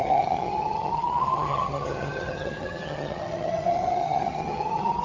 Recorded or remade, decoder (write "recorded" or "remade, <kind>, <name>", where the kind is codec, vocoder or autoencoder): remade, vocoder, HiFi-GAN